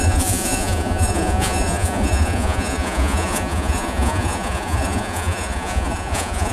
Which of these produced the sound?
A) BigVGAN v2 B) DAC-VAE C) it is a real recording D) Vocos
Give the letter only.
D